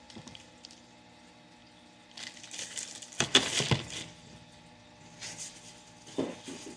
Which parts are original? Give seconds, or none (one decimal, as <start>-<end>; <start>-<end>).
0.0-6.8